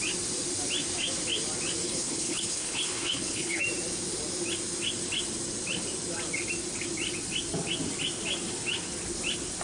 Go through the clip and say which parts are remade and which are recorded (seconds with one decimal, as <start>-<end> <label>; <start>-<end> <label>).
0.0-1.8 recorded; 1.8-3.6 remade; 3.6-9.6 recorded